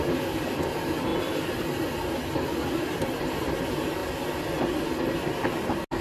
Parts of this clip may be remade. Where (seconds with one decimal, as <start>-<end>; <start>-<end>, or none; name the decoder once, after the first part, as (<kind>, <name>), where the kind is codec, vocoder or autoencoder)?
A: none